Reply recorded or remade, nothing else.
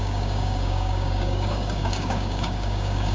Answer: remade